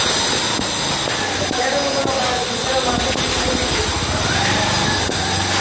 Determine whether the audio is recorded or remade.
recorded